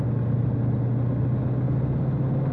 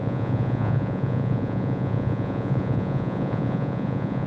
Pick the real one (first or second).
first